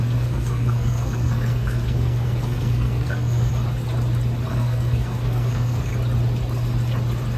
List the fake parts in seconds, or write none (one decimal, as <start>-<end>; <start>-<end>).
0.0-3.5; 4.5-5.9